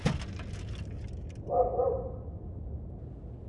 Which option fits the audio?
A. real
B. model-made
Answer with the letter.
A